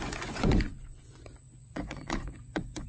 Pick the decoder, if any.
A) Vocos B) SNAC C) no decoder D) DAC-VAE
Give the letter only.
A